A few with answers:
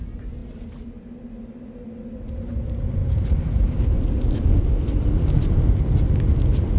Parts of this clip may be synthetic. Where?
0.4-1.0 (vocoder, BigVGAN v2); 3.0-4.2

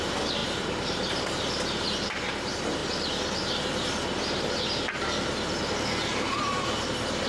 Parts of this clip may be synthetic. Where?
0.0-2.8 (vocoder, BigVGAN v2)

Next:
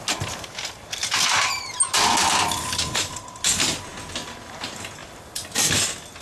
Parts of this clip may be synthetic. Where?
none

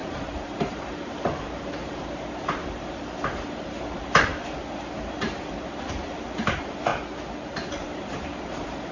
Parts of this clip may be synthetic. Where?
0.0-6.9 (vocoder, BigVGAN v2); 7.7-8.9

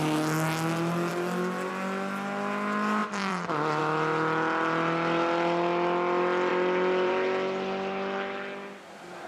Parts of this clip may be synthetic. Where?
3.0-3.8 (vocoder, BigVGAN v2); 6.5-7.1

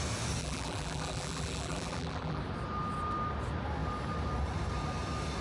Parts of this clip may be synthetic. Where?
0.4-2.4 (vocoder, BigVGAN v2)

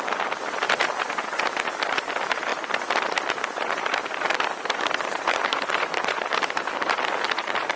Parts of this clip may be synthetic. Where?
0.0-2.5 (vocoder, BigVGAN v2); 4.6-7.8